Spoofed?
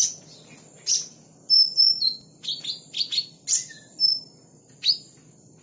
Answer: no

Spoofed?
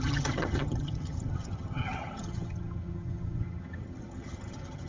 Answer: yes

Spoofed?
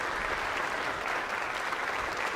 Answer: no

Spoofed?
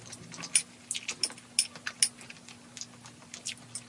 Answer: no